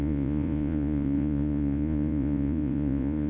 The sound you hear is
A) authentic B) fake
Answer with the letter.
B